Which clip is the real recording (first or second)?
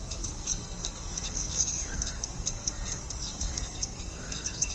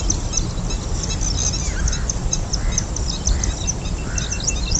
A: second